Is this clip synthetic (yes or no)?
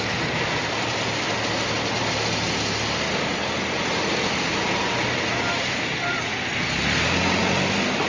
no